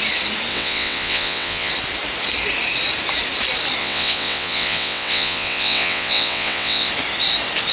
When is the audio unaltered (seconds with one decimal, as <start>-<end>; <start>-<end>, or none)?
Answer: 0.0-0.5; 1.7-3.8; 6.9-7.7